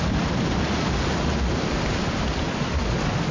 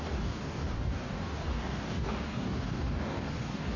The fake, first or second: second